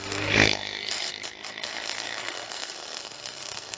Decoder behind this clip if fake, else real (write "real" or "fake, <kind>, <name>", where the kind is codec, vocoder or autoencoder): fake, codec, SNAC